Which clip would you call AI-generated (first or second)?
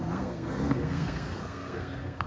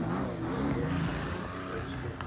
first